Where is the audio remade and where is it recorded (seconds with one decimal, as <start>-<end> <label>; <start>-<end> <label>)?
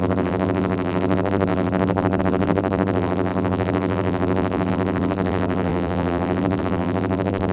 0.0-7.5 remade